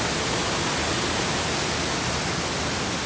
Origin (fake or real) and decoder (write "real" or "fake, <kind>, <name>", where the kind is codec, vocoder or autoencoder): real